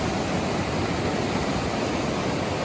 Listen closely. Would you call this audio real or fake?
real